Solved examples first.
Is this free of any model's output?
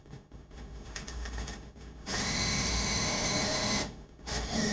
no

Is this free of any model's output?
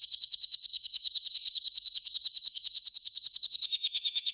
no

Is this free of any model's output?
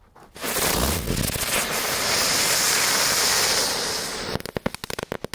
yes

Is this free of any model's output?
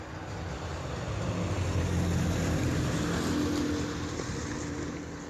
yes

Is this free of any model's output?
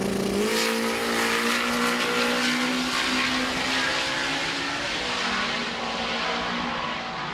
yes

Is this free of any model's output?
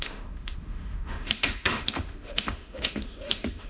no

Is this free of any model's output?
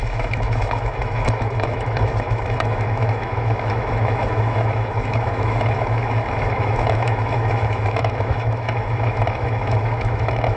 no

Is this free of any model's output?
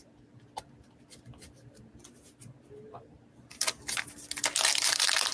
yes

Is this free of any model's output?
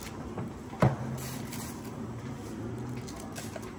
yes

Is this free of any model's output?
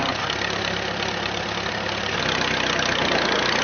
yes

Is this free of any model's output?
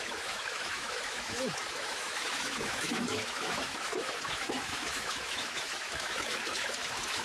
no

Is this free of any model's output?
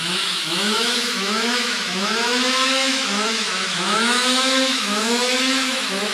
no